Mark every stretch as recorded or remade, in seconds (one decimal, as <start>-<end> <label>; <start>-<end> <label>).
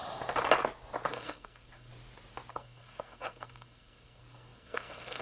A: 0.0-1.1 recorded; 1.1-1.9 remade; 1.9-2.5 recorded; 2.5-5.2 remade